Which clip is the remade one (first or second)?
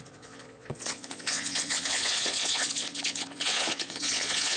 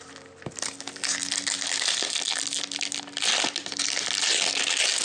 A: first